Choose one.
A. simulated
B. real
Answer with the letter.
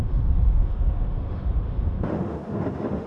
A